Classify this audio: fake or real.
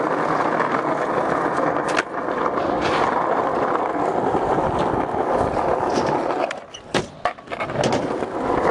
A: real